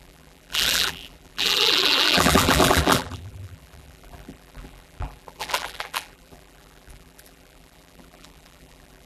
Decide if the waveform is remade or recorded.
remade